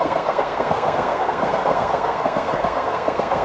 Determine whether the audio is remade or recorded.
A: remade